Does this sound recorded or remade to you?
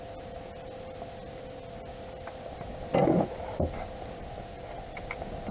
recorded